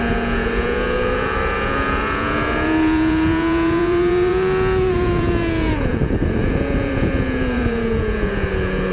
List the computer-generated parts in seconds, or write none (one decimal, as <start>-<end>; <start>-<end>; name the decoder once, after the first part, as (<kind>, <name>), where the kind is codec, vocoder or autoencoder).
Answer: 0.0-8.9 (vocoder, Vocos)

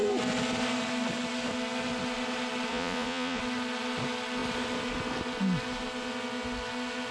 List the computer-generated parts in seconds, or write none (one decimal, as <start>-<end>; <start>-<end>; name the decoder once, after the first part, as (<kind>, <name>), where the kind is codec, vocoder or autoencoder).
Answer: 2.7-3.4 (vocoder, Vocos)

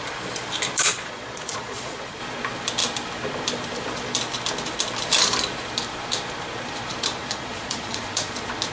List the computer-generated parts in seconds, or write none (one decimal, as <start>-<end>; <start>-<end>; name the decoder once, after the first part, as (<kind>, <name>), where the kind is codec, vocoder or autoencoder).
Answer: 0.9-2.2 (vocoder, Vocos); 7.2-8.0